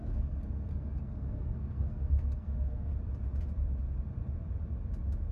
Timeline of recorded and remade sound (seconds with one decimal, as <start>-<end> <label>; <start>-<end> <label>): 0.0-2.9 remade; 2.9-5.3 recorded